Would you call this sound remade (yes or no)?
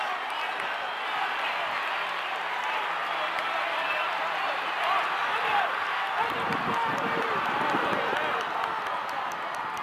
no